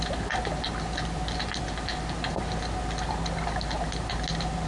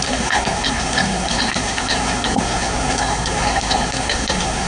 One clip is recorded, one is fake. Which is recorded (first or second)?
first